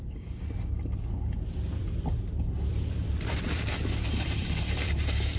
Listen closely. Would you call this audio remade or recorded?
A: remade